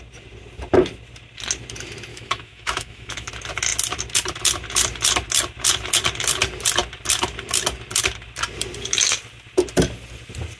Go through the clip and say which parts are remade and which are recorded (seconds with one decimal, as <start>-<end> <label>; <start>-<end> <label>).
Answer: 0.0-2.1 recorded; 2.1-3.3 remade; 3.3-10.6 recorded